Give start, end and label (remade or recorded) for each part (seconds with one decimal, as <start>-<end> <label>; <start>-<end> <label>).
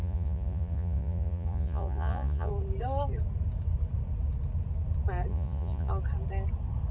0.0-2.5 remade; 2.5-5.3 recorded; 5.3-5.9 remade; 5.9-6.9 recorded